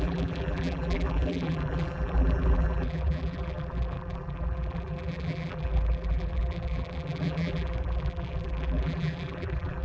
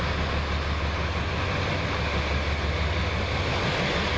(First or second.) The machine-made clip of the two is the first